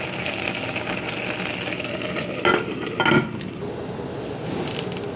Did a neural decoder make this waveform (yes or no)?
no